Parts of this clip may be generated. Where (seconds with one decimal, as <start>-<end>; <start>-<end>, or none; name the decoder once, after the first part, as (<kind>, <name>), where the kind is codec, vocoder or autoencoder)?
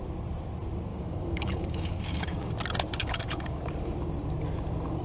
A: 0.9-2.5 (codec, DAC); 3.0-3.6